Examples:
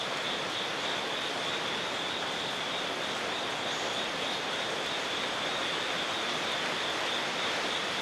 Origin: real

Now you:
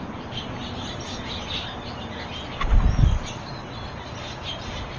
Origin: real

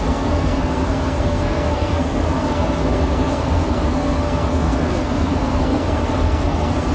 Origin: fake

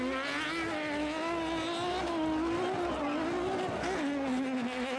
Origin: real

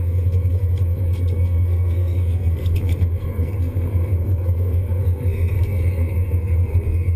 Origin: fake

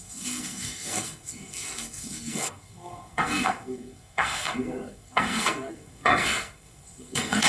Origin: fake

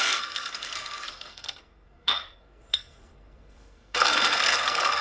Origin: fake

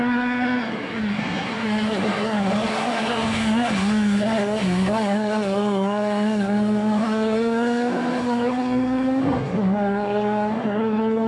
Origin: fake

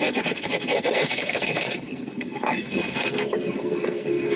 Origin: fake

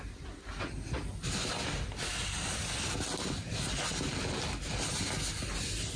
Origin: real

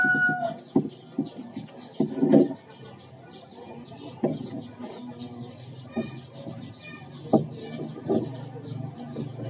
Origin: real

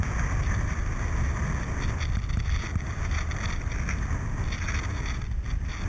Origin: real